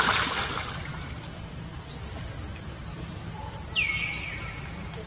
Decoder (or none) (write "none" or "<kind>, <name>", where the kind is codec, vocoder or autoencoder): none